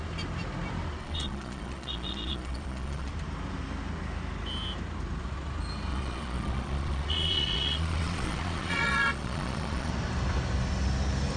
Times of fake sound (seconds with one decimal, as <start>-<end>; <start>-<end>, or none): 1.0-3.1; 5.9-9.9